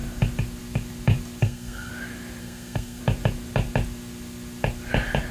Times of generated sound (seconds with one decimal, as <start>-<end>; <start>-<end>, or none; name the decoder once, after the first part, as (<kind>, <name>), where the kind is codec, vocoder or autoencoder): 1.4-1.9 (codec, SNAC); 2.4-3.0

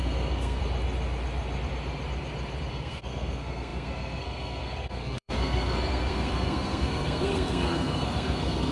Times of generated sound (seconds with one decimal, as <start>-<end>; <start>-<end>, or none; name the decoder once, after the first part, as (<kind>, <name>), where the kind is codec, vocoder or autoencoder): 0.0-0.6 (codec, SNAC); 2.7-8.7

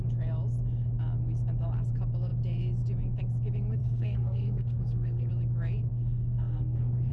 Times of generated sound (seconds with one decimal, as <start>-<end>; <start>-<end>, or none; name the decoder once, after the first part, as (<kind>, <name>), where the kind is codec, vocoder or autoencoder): 3.8-5.3 (codec, SNAC); 5.9-7.1

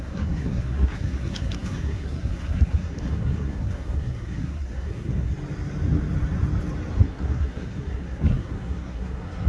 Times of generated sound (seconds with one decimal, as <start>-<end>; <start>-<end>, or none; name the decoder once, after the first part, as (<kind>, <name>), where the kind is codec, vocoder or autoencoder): 0.0-5.3 (codec, SNAC); 7.0-9.5